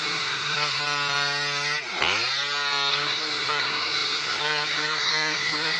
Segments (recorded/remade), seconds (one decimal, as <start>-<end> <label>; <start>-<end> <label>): 0.0-0.8 remade; 0.8-2.9 recorded; 2.9-5.8 remade

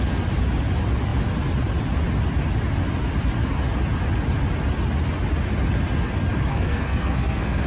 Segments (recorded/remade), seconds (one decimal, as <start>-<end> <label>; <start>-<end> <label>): 0.0-6.5 recorded; 6.5-7.7 remade

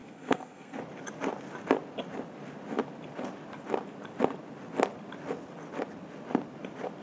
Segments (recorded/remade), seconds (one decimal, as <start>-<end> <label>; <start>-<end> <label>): 0.0-0.8 remade; 0.8-7.0 recorded

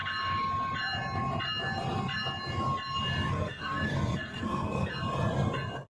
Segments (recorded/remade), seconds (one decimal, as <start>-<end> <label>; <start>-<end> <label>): 0.0-3.3 recorded; 3.3-4.9 remade; 4.9-6.0 recorded

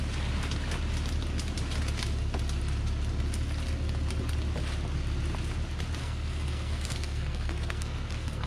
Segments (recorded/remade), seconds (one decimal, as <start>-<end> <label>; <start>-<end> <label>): 0.0-6.0 recorded; 6.0-8.5 remade

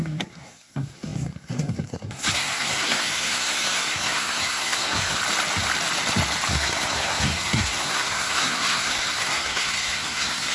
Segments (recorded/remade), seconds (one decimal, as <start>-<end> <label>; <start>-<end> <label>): 0.0-5.2 remade; 5.2-6.5 recorded; 6.5-10.5 remade

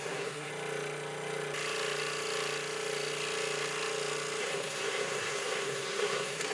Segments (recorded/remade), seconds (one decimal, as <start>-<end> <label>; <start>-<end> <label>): 0.0-0.5 remade; 0.5-4.4 recorded; 4.4-6.5 remade